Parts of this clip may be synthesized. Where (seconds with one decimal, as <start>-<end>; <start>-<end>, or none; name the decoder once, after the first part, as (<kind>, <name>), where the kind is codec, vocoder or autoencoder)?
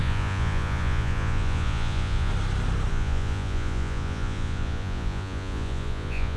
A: 0.0-2.3 (vocoder, Vocos); 2.9-6.4